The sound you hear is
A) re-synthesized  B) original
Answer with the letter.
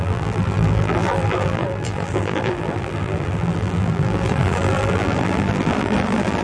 A